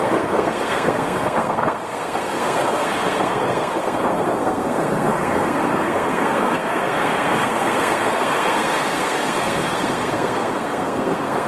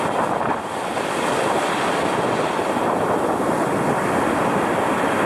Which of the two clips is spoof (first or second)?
first